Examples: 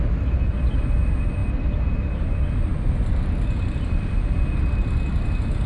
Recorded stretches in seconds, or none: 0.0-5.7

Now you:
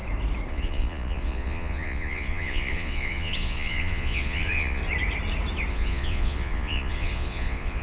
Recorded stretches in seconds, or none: 0.0-0.5; 4.8-5.7

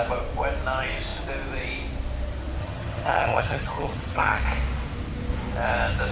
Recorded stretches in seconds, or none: 0.0-2.6; 4.4-6.1

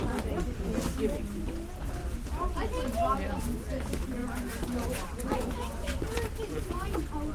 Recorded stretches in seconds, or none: 0.0-2.0; 2.7-4.2; 6.7-7.3

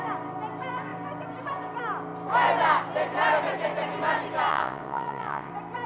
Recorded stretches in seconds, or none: 0.0-4.5; 5.5-5.9